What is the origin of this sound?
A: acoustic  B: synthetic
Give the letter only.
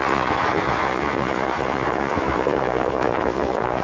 B